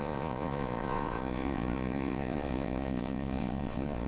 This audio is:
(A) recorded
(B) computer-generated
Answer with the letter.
B